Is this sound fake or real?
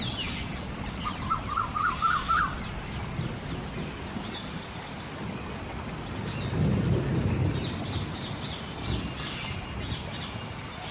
real